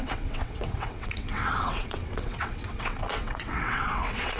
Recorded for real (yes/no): no